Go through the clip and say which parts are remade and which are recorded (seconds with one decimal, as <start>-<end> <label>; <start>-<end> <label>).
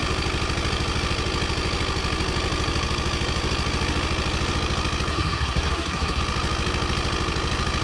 0.0-5.1 recorded; 5.1-6.2 remade; 6.2-7.8 recorded